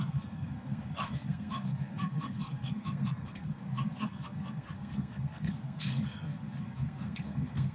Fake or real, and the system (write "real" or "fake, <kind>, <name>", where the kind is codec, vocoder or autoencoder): fake, codec, SNAC